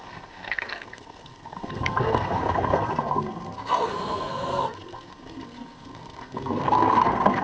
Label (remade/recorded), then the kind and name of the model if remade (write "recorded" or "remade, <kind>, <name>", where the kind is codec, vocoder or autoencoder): remade, codec, SNAC